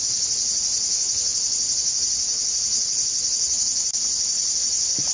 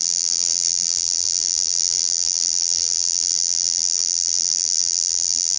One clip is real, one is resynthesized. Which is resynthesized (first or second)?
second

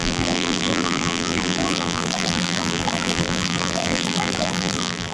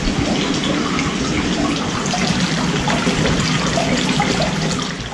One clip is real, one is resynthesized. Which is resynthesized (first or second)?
first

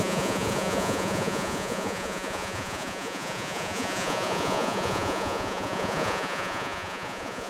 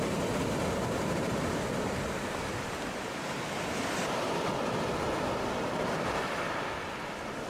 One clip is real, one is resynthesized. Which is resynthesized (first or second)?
first